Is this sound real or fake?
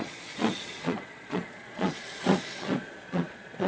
fake